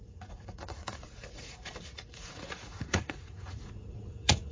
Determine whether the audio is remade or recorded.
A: remade